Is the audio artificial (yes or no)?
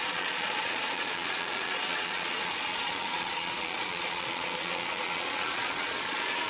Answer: yes